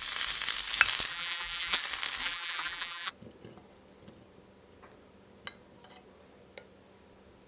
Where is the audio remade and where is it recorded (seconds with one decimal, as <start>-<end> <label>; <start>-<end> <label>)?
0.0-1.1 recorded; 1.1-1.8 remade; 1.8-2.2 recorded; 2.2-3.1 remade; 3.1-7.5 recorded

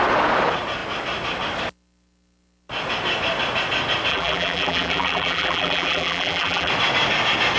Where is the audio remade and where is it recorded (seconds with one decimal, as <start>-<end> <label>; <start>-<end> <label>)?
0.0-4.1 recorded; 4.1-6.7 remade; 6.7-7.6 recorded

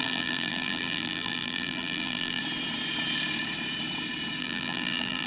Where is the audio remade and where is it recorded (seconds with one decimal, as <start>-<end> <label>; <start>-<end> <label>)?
0.0-2.4 remade; 2.4-4.4 recorded; 4.4-5.3 remade

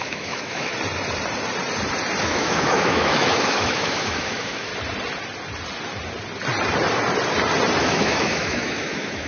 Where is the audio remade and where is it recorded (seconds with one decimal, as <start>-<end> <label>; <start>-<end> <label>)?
0.0-0.7 remade; 0.7-2.2 recorded; 2.2-4.7 remade; 4.7-7.8 recorded; 7.8-9.3 remade

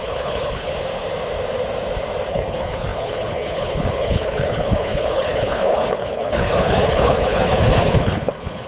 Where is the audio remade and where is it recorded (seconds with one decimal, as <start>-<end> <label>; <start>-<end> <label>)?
0.0-0.7 remade; 0.7-2.3 recorded; 2.3-8.7 remade